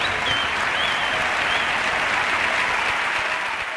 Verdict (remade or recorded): recorded